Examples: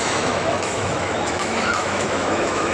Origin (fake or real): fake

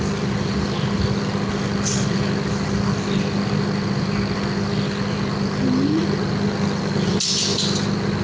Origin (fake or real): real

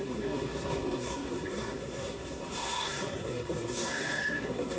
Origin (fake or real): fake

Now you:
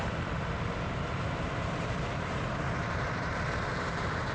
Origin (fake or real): fake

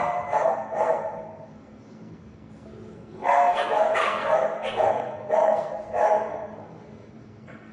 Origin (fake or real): fake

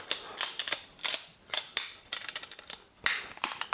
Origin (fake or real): real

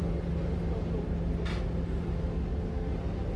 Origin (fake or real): real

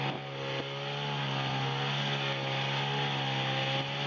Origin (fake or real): real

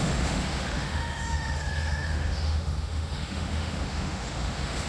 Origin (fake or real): fake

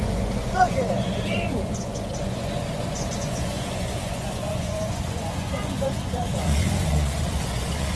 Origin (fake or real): fake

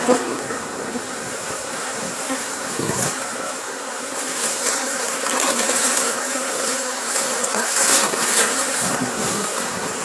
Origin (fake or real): fake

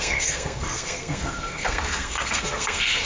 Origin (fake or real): fake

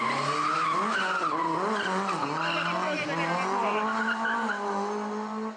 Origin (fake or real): real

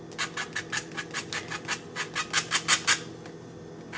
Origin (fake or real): real